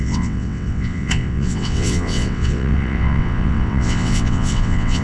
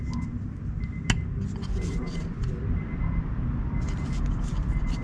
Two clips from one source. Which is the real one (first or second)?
second